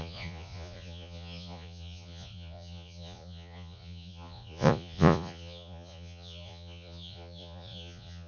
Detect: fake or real fake